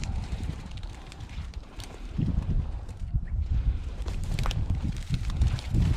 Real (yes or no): no